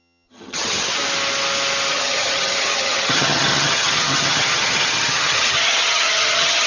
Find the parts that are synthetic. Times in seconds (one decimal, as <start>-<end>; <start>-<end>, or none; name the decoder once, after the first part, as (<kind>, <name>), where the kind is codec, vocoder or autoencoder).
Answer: 0.0-0.9 (vocoder, HiFi-GAN); 1.9-6.7